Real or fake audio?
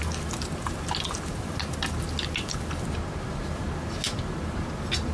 real